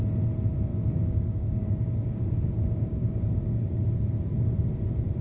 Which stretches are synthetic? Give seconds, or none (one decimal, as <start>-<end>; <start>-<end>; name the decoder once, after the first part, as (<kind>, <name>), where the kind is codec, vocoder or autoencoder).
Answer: 0.7-3.8 (codec, DAC)

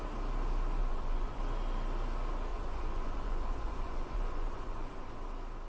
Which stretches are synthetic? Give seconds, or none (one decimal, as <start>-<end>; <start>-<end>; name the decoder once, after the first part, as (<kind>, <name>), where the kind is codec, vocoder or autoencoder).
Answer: 0.8-1.4 (vocoder, Vocos); 2.5-5.2